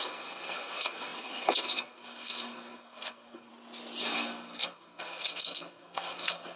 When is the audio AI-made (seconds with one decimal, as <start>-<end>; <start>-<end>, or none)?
0.0-3.5; 4.0-6.6